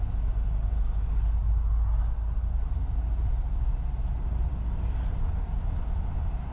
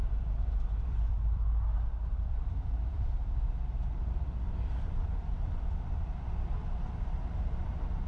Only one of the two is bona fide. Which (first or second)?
first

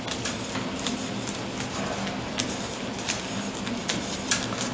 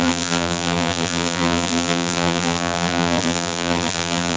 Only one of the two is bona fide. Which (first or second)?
first